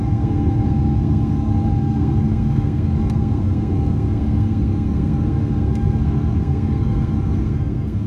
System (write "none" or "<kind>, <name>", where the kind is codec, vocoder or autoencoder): codec, SNAC